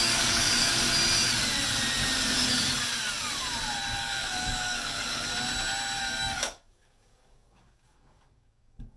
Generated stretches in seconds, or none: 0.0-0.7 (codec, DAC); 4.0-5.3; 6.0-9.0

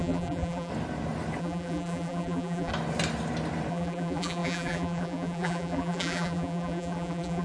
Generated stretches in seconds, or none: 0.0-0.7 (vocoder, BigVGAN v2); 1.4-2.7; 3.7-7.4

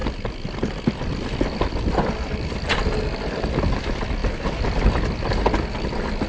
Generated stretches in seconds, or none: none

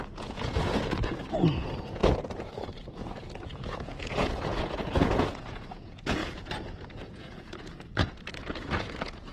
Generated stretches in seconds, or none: 0.0-9.3 (vocoder, Vocos)

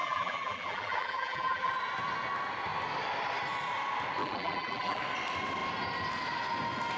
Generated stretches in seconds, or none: 0.0-1.7 (vocoder, BigVGAN v2); 4.2-5.0